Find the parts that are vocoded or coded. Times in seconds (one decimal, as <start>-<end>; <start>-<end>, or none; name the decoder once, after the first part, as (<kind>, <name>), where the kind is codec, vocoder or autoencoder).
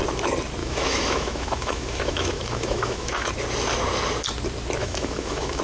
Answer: 0.6-3.3 (autoencoder, DAC-VAE); 4.8-5.6